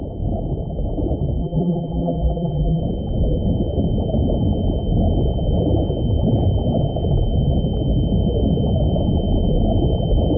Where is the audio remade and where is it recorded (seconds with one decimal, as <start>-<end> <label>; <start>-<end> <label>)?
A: 0.0-1.4 recorded; 1.4-2.8 remade; 2.8-10.4 recorded